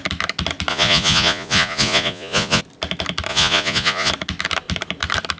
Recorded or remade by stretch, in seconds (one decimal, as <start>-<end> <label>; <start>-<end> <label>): 0.0-0.7 recorded; 0.7-2.6 remade; 2.6-3.3 recorded; 3.3-4.1 remade; 4.1-5.4 recorded